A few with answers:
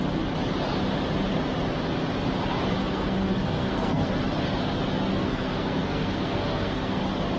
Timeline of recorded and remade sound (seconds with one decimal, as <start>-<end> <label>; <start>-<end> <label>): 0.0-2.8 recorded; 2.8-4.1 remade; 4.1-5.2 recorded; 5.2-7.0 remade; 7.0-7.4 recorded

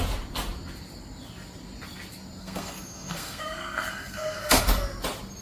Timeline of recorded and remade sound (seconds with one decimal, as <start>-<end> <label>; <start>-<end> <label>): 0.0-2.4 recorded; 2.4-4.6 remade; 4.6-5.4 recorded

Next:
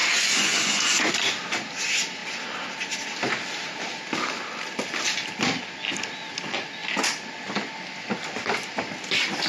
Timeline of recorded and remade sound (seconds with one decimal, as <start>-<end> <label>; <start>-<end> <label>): 0.0-1.1 remade; 1.1-9.5 recorded

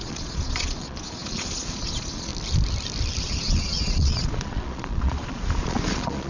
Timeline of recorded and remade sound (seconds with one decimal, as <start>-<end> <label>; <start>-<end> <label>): 0.0-2.3 remade; 2.3-3.2 recorded; 3.2-6.3 remade

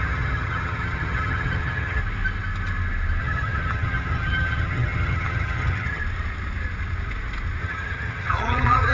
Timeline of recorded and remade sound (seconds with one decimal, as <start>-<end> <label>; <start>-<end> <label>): 0.0-2.0 remade; 2.0-3.2 recorded; 3.2-6.0 remade; 6.0-7.6 recorded; 7.6-8.9 remade